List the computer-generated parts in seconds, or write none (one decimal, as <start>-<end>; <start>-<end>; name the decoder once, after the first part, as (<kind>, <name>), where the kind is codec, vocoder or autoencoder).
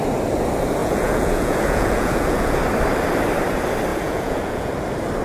0.8-2.6 (vocoder, Vocos); 3.9-4.7